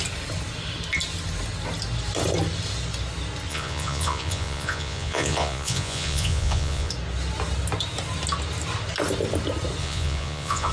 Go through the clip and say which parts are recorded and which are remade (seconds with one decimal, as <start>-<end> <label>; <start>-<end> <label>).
0.0-3.5 recorded; 3.5-6.9 remade; 6.9-9.8 recorded; 9.8-10.7 remade